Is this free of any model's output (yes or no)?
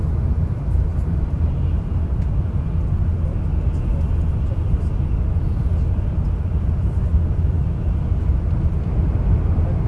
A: yes